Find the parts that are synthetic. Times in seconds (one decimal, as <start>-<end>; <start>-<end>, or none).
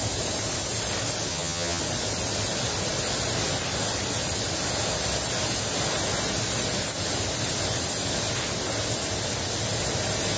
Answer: 1.3-1.8